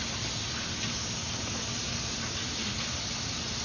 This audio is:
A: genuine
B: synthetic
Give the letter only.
A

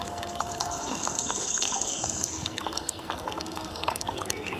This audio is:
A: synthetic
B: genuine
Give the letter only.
A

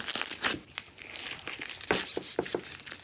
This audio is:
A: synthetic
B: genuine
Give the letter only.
B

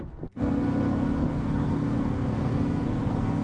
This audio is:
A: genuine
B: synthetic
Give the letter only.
B